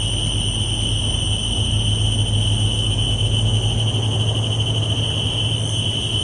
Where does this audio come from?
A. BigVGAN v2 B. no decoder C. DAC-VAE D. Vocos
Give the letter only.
B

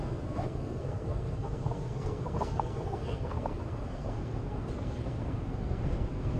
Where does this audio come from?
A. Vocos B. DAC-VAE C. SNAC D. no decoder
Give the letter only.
C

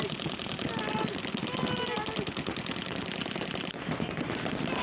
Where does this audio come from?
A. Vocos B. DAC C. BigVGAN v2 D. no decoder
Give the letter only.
D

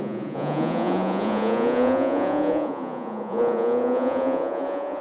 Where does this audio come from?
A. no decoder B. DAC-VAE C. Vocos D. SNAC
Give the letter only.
C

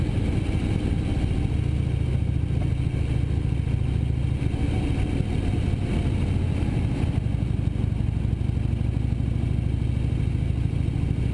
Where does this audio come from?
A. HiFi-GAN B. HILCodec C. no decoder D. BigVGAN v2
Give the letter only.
C